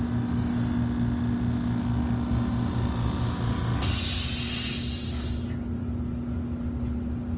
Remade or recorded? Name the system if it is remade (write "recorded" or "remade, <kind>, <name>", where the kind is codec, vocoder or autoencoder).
recorded